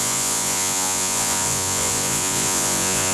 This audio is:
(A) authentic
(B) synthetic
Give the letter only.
B